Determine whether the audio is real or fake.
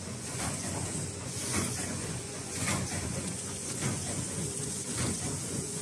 fake